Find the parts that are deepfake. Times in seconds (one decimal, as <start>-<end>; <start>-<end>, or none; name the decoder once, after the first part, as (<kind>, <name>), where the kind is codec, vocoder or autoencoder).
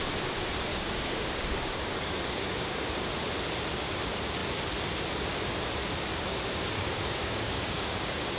0.7-3.1 (codec, DAC); 6.1-8.4